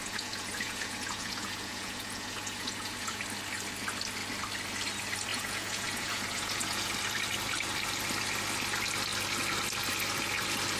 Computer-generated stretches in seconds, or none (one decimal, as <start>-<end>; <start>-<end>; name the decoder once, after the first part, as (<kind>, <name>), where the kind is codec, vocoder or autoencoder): 0.0-3.2 (vocoder, Vocos); 5.3-6.9